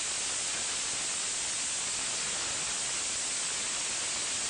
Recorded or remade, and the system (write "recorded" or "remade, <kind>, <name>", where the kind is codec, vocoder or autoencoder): recorded